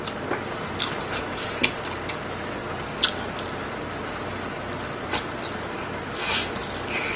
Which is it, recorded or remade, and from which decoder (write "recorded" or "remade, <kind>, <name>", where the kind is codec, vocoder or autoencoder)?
recorded